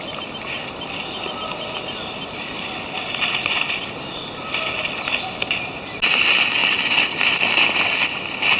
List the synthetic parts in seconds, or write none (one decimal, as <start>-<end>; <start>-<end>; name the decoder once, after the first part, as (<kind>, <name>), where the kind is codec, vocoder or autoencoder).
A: none